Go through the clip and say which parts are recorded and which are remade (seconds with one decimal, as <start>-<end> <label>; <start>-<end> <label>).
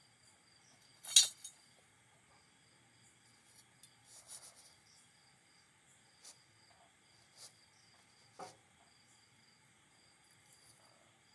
0.0-11.3 recorded